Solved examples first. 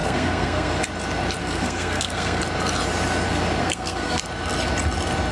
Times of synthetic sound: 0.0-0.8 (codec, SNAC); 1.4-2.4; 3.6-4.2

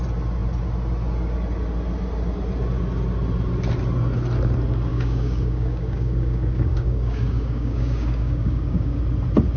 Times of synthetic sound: 4.9-9.0 (codec, DAC)

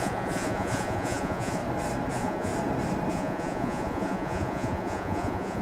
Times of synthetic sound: 0.0-1.6 (vocoder, Vocos); 2.1-2.5; 3.1-5.6